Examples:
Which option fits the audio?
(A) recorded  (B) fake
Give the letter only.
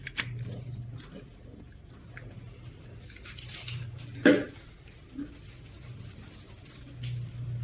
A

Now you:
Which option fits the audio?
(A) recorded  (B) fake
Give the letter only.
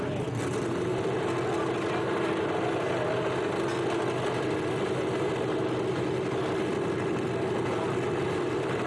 A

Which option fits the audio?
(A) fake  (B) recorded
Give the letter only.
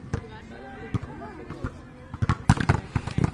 B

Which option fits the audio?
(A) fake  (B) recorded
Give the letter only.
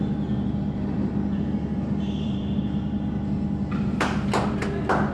B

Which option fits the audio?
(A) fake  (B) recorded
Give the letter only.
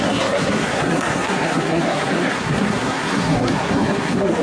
A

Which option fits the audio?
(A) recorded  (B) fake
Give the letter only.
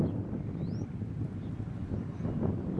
A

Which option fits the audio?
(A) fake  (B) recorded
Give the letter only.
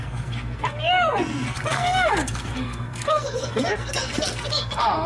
A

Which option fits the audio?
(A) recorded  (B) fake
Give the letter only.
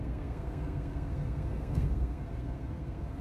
B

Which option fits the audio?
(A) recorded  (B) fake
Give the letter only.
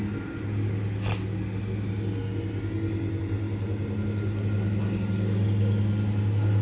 A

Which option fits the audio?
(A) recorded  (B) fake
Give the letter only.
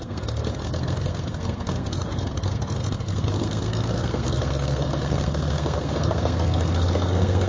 B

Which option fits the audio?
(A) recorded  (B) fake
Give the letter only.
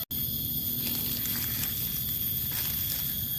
A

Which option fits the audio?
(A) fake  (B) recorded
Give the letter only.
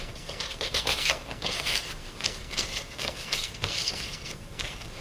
A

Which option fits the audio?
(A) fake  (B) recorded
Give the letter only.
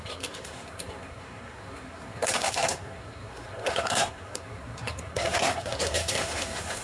A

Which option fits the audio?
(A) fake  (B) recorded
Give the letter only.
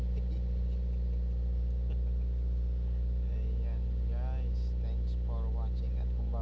B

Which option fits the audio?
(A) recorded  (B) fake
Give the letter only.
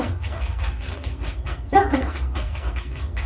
B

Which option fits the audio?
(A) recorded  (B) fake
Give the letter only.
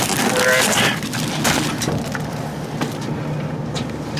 A